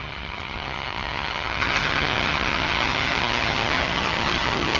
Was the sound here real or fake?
fake